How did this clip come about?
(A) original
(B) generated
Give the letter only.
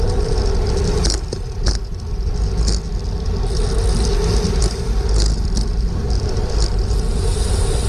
A